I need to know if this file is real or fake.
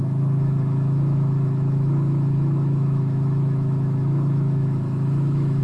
fake